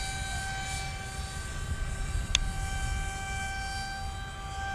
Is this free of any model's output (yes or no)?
yes